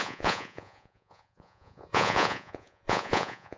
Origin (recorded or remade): remade